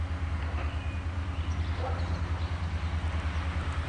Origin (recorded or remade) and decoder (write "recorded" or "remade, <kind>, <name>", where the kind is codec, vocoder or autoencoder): recorded